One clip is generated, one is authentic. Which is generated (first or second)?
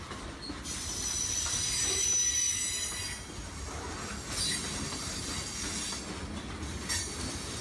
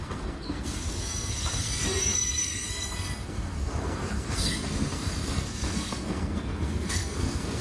second